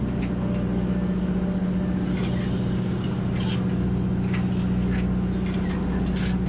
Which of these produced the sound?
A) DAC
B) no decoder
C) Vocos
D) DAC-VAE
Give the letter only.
B